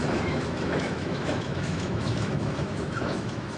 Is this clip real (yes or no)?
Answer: no